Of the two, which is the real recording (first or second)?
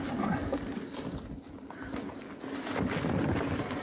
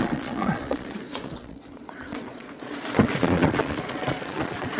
first